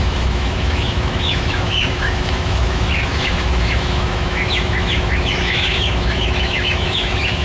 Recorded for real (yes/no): no